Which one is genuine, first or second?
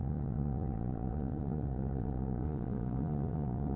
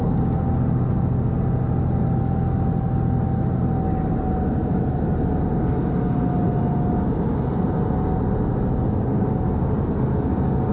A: second